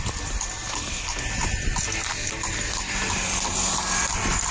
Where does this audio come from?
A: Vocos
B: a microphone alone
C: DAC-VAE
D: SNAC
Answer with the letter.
B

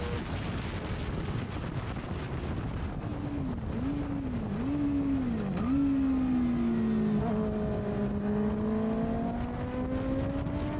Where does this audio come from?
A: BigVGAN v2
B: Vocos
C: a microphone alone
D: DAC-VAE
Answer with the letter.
C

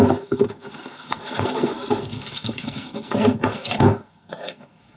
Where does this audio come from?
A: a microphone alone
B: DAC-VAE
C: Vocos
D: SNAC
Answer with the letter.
D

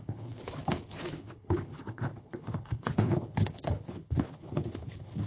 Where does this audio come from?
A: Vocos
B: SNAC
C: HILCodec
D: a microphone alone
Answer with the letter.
C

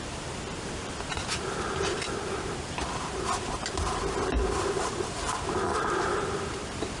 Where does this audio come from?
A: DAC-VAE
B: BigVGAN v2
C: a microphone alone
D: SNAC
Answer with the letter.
B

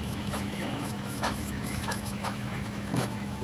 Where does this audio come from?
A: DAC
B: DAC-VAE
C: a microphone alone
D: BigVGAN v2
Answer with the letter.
B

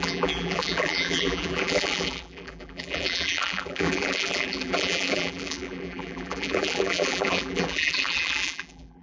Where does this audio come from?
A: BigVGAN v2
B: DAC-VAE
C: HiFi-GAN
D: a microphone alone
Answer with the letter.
A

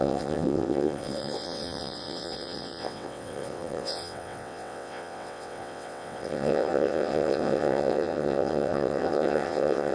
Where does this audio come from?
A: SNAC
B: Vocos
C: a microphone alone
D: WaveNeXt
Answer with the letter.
D